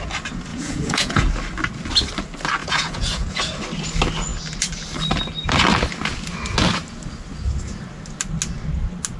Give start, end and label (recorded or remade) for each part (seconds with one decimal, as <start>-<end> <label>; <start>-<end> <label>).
0.0-0.5 recorded; 0.5-1.3 remade; 1.3-2.6 recorded; 2.6-3.4 remade; 3.4-9.2 recorded

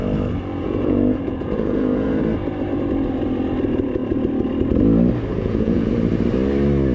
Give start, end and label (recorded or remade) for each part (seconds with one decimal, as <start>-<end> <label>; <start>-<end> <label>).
0.0-0.5 recorded; 0.5-2.2 remade; 2.2-5.3 recorded; 5.3-5.9 remade; 5.9-6.9 recorded

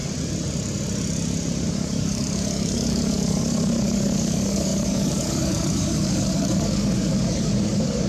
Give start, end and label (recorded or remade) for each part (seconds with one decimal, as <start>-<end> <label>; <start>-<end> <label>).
0.0-1.7 recorded; 1.7-8.1 remade

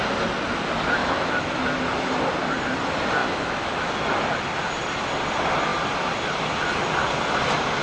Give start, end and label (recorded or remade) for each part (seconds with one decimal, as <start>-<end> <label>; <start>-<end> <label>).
0.0-1.0 recorded; 1.0-1.6 remade; 1.6-3.2 recorded; 3.2-3.9 remade; 3.9-7.8 recorded

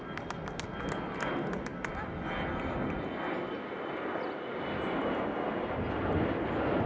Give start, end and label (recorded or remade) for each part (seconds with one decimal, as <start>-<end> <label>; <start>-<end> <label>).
0.0-6.9 recorded